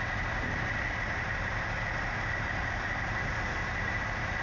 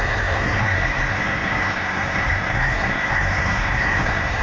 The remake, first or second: second